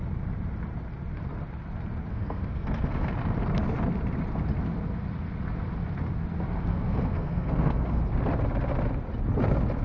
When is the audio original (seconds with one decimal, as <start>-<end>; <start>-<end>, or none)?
0.0-2.1; 3.1-6.7; 8.0-9.8